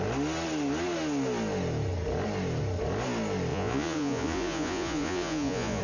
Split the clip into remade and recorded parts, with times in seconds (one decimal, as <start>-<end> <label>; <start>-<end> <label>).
0.0-3.5 recorded; 3.5-5.8 remade

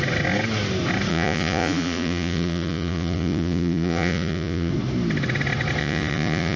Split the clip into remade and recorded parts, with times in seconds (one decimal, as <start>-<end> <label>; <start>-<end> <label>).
0.0-1.1 recorded; 1.1-4.7 remade; 4.7-5.8 recorded; 5.8-6.6 remade

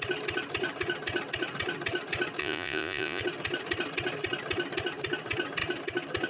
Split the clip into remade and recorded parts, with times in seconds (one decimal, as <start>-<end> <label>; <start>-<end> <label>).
0.0-2.4 recorded; 2.4-3.2 remade; 3.2-6.3 recorded

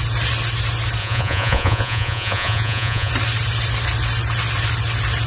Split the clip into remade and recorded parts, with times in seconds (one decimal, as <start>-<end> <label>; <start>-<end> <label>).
0.0-1.0 recorded; 1.0-3.1 remade; 3.1-5.3 recorded

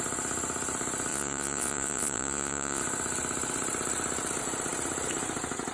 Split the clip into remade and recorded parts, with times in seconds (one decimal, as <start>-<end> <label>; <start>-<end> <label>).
0.0-1.1 recorded; 1.1-2.8 remade; 2.8-5.7 recorded

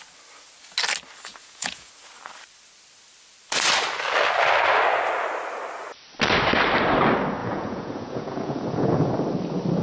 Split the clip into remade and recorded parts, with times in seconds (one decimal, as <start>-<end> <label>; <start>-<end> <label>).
0.0-1.3 recorded; 1.3-1.9 remade; 1.9-7.4 recorded; 7.4-9.1 remade; 9.1-9.8 recorded

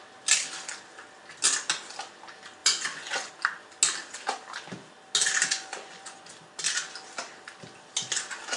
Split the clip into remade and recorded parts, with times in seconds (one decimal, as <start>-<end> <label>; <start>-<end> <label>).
0.0-2.6 recorded; 2.6-3.3 remade; 3.3-5.5 recorded; 5.5-6.3 remade; 6.3-8.6 recorded